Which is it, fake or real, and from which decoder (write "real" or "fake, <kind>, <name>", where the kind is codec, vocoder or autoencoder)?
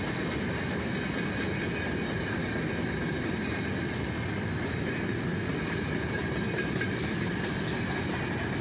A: real